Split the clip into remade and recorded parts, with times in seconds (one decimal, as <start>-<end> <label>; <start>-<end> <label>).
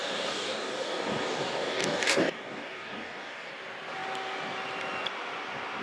0.0-3.5 remade; 3.5-5.8 recorded